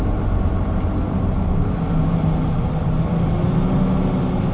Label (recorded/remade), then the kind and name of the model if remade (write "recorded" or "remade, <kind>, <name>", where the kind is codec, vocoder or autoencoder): recorded